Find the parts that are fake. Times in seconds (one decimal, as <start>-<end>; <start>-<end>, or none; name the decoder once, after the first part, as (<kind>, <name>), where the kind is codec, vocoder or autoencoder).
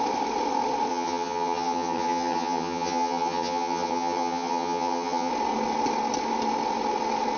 0.9-5.3 (vocoder, HiFi-GAN)